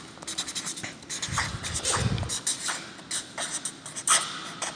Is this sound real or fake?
real